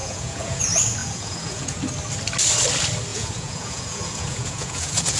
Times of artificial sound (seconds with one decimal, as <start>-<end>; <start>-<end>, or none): 0.0-0.6; 1.0-1.8; 3.1-5.2